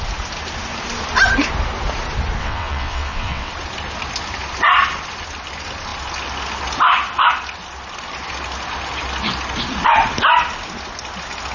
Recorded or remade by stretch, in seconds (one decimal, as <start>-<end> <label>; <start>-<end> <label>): 0.0-2.4 recorded; 2.4-3.5 remade; 3.5-11.5 recorded